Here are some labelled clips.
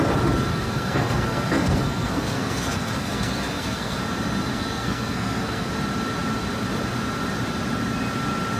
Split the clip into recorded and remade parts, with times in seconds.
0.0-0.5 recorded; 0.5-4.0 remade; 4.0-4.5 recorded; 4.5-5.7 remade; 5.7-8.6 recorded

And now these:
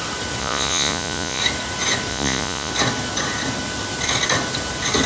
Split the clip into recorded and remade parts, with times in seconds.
0.0-0.4 recorded; 0.4-1.4 remade; 1.4-2.1 recorded; 2.1-2.7 remade; 2.7-5.1 recorded

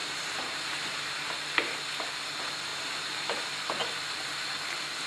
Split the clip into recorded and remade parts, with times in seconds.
0.0-1.3 remade; 1.3-2.7 recorded; 2.7-3.4 remade; 3.4-5.1 recorded

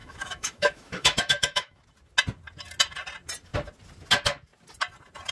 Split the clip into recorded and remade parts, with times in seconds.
0.0-1.8 remade; 1.8-5.3 recorded

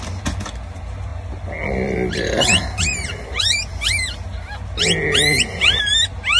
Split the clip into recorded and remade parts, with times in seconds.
0.0-6.4 recorded

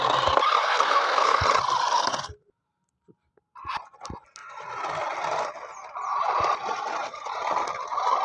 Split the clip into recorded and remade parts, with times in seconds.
0.0-0.6 recorded; 0.6-1.4 remade; 1.4-8.2 recorded